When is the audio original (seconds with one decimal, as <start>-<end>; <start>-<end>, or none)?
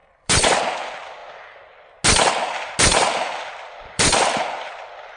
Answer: 0.6-2.9; 4.4-5.2